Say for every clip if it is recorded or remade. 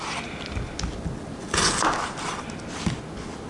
recorded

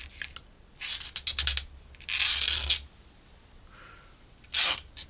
recorded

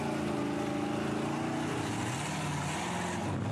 recorded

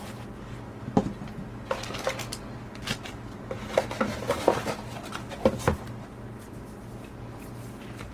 recorded